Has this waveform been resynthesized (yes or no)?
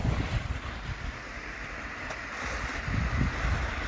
no